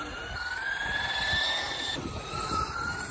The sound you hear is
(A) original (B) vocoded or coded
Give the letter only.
A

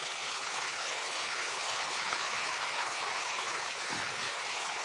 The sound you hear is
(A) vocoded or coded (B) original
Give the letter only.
A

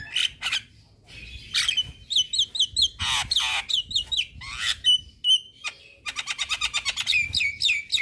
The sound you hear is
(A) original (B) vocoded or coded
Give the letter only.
A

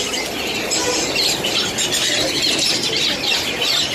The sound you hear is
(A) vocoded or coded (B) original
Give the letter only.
A